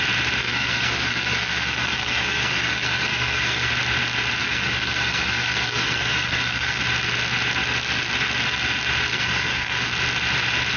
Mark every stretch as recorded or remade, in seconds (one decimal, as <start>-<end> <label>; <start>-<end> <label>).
0.0-0.4 recorded; 0.4-3.7 remade; 3.7-4.4 recorded; 4.4-6.8 remade; 6.8-9.1 recorded; 9.1-9.9 remade; 9.9-10.8 recorded